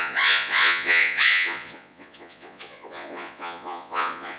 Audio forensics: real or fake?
fake